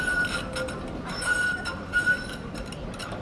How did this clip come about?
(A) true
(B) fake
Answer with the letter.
A